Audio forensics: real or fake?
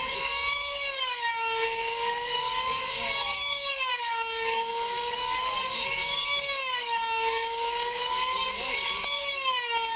fake